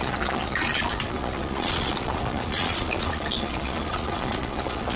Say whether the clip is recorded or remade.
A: remade